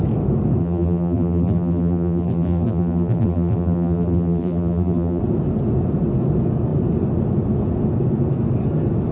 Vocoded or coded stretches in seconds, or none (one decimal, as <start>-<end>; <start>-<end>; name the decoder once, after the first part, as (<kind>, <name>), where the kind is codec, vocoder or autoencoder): 0.6-5.2 (vocoder, BigVGAN v2)